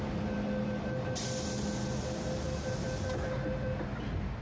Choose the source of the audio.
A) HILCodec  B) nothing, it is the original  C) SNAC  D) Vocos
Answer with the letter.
B